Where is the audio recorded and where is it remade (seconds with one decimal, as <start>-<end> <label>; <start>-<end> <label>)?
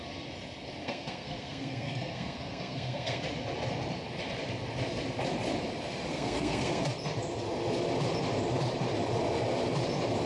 0.0-0.8 recorded; 0.8-3.2 remade; 3.2-6.1 recorded; 6.1-6.8 remade; 6.8-10.3 recorded